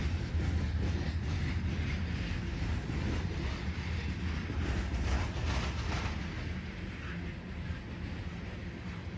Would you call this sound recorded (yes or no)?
yes